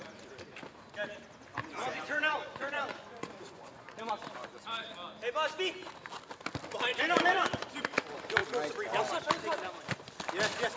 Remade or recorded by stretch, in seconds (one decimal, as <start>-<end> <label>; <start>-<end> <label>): 0.0-1.5 recorded; 1.5-4.1 remade; 4.1-6.9 recorded; 6.9-7.8 remade; 7.8-10.8 recorded